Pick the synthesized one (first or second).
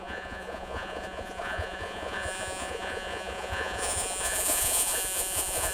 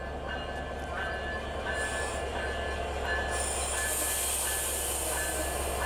first